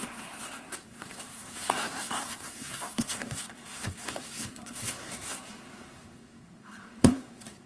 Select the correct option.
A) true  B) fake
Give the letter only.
B